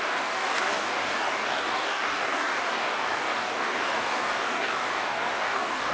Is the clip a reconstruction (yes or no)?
yes